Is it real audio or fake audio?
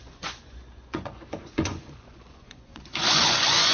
fake